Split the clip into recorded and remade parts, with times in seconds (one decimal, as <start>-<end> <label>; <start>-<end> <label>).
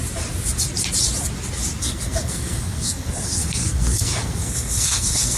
0.0-1.8 recorded; 1.8-5.4 remade